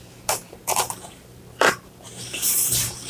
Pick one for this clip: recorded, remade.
remade